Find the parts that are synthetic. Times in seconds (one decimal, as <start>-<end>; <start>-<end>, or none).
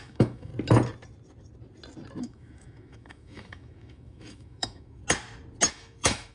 0.0-0.5; 2.2-5.0; 5.7-6.3